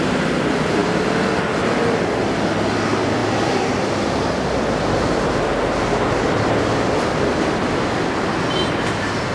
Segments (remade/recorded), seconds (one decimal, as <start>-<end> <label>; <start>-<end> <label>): 0.0-9.3 recorded